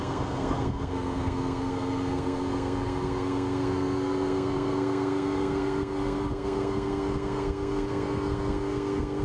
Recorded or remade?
remade